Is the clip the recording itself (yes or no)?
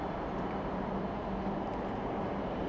no